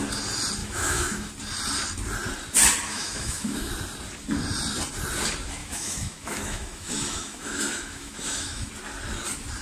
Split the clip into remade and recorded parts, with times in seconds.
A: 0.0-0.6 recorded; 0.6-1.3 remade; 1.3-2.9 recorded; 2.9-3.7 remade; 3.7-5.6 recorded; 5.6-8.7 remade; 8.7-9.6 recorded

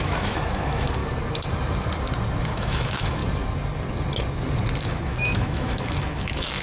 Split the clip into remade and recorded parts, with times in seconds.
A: 0.0-1.0 remade; 1.0-2.4 recorded; 2.4-3.2 remade; 3.2-4.8 recorded; 4.8-6.6 remade

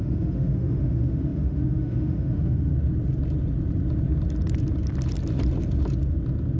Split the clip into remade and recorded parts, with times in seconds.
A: 0.0-2.7 remade; 2.7-6.6 recorded